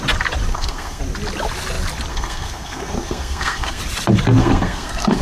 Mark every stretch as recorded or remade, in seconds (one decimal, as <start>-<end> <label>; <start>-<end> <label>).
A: 0.0-0.5 recorded; 0.5-1.0 remade; 1.0-2.1 recorded; 2.1-3.8 remade; 3.8-4.4 recorded; 4.4-5.2 remade